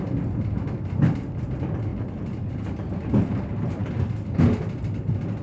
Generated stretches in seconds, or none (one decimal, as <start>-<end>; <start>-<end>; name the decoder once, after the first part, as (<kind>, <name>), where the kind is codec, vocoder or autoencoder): none